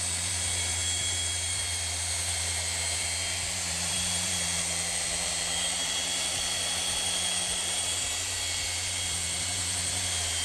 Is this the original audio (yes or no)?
no